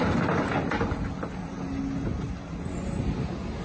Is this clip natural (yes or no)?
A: yes